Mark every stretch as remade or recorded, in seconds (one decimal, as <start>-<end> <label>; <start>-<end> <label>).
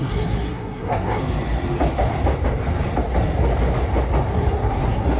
0.0-1.2 remade; 1.2-4.3 recorded; 4.3-5.2 remade